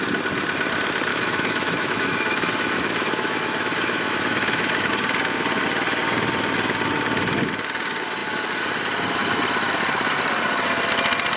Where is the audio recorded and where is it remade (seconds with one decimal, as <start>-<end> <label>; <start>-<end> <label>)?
0.0-1.1 recorded; 1.1-4.9 remade; 4.9-11.4 recorded